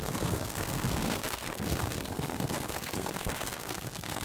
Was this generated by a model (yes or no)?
yes